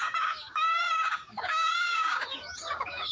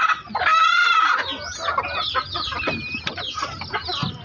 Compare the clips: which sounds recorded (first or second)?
second